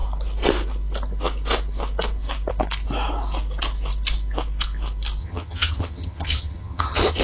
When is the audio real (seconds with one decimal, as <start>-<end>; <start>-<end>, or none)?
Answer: 0.0-5.2